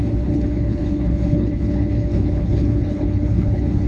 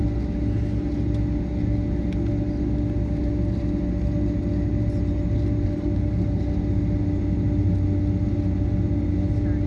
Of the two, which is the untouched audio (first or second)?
second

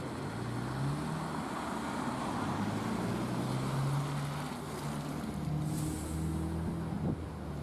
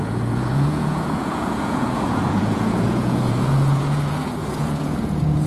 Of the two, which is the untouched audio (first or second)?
first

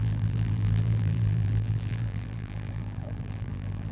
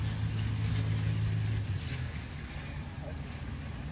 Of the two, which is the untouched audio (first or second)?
second